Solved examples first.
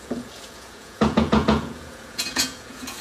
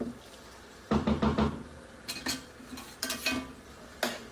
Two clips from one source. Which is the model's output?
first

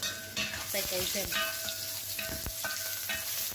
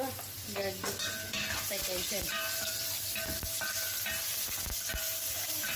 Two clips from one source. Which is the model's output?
second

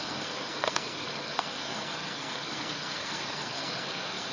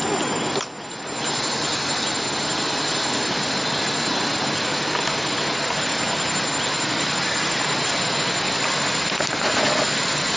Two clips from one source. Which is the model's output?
first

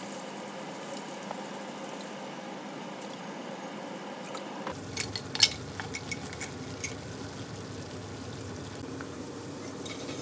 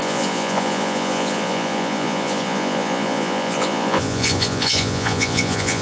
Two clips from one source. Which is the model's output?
second